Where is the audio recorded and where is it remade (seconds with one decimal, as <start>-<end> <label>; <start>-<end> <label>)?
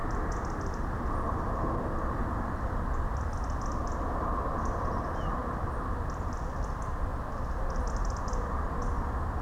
0.0-5.4 remade; 5.4-6.5 recorded; 6.5-7.1 remade; 7.1-7.9 recorded; 7.9-9.4 remade